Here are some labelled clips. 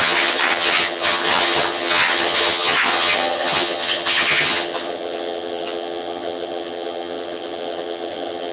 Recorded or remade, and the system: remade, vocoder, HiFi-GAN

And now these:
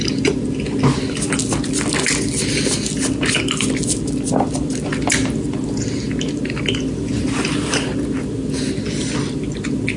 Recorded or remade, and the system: recorded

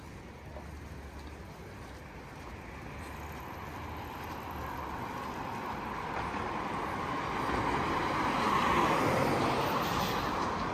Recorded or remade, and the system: recorded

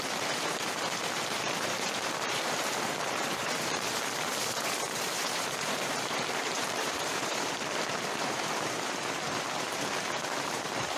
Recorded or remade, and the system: remade, vocoder, BigVGAN v2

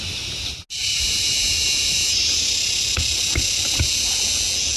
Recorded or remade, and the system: recorded